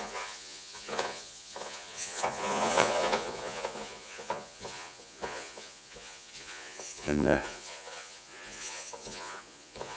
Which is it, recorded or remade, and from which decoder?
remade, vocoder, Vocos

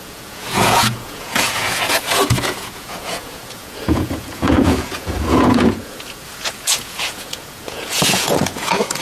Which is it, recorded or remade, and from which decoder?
remade, vocoder, Vocos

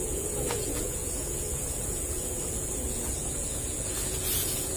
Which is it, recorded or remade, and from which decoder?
remade, vocoder, Vocos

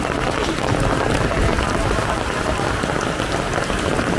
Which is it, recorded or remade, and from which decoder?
recorded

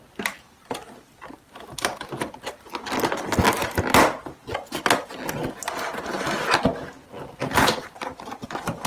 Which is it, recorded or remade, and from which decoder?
recorded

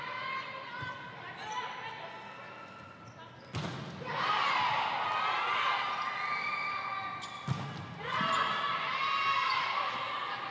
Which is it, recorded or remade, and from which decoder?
recorded